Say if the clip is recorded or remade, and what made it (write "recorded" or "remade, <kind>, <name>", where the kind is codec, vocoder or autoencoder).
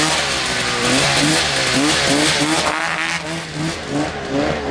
recorded